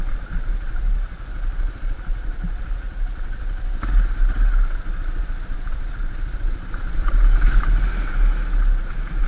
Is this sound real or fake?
real